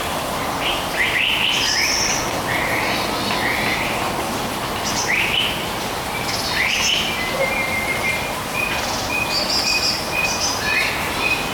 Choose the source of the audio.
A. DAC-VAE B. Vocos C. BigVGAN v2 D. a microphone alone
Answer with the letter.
D